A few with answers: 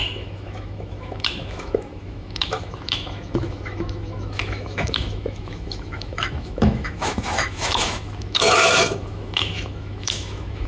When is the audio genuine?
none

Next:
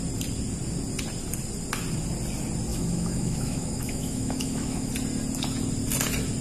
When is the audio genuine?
0.0-2.7; 4.9-6.4

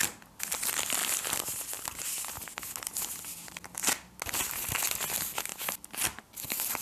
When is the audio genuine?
0.0-6.8

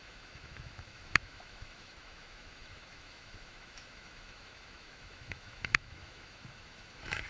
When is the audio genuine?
none

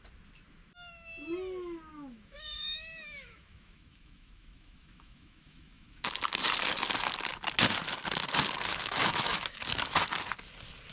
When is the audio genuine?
0.0-1.9; 6.1-8.7; 9.6-10.9

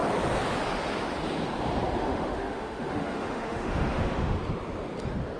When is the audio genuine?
0.0-2.0; 4.4-5.4

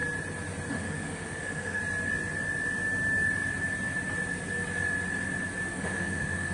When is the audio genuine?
0.0-0.7; 1.8-5.7